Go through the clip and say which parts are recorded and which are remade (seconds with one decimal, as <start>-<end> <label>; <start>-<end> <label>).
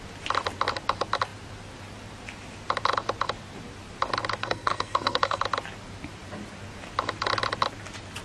0.0-4.4 recorded; 4.4-5.4 remade; 5.4-8.2 recorded